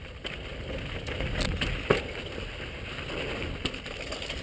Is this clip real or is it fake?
real